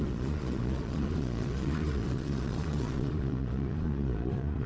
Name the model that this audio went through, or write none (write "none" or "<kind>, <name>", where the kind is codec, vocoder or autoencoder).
vocoder, Vocos